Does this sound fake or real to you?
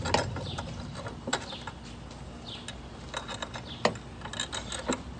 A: real